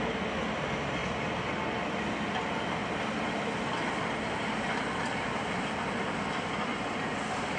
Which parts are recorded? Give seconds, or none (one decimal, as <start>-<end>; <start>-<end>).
0.0-7.6